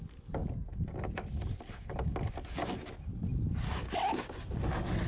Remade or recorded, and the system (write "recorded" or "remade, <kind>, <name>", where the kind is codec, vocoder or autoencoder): recorded